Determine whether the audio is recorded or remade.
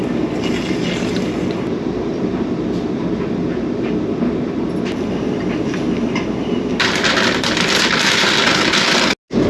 recorded